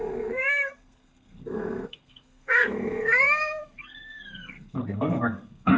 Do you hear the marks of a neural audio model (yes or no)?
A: yes